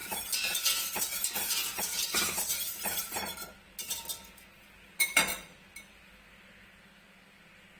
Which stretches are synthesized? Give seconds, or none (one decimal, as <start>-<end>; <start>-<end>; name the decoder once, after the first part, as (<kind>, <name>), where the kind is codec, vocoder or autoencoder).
none